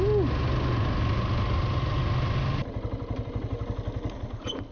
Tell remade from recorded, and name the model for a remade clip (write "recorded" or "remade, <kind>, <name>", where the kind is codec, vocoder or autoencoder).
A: recorded